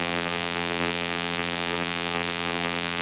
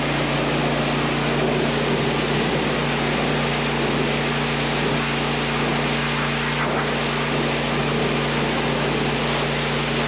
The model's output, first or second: first